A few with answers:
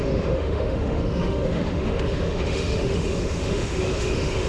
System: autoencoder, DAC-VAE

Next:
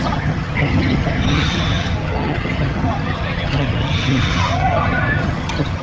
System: vocoder, HiFi-GAN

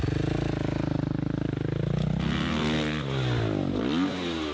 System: none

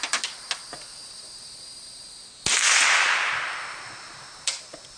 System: none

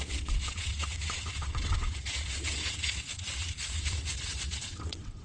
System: vocoder, WaveNeXt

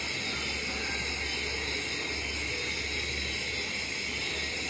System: none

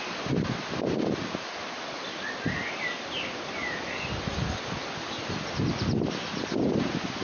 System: none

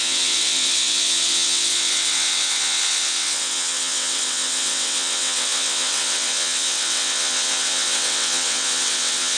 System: vocoder, WaveNeXt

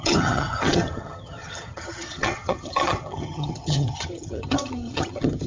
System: vocoder, HiFi-GAN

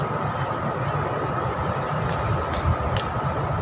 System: none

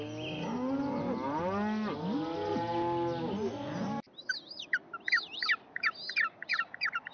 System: none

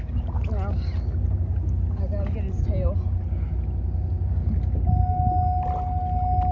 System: none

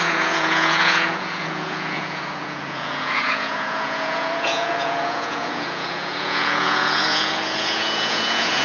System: vocoder, Vocos